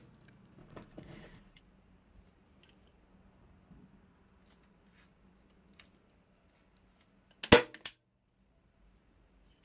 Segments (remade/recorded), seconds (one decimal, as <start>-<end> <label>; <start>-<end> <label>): 0.0-0.6 recorded; 0.6-1.6 remade; 1.6-9.6 recorded